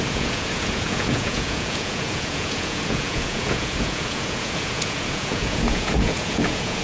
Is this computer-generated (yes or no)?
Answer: yes